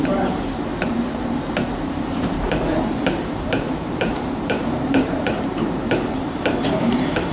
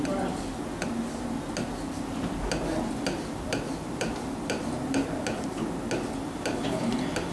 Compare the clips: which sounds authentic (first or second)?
second